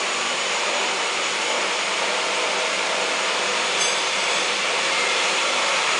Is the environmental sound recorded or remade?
remade